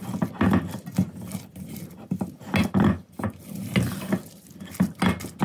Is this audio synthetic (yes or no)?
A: no